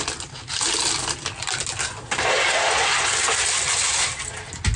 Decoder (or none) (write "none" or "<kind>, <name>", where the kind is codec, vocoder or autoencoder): none